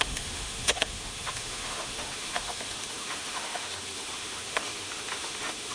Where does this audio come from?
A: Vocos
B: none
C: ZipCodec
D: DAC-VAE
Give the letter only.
D